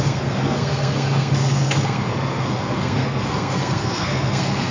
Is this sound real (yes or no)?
no